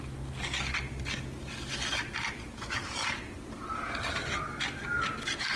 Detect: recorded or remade recorded